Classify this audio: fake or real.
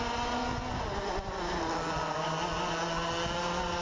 real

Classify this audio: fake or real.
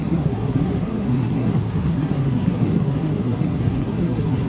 fake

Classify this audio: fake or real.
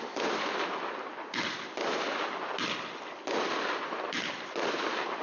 real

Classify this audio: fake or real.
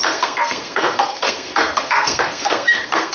fake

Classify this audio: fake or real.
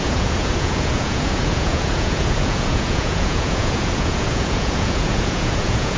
fake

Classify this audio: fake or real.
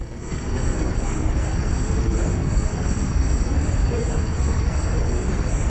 fake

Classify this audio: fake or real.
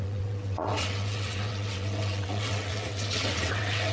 fake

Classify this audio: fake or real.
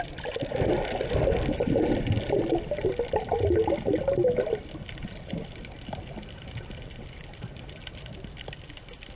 real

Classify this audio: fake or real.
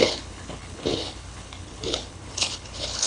fake